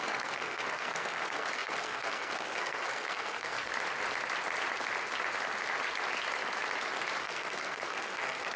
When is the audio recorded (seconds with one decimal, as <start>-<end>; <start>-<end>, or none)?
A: 3.7-7.2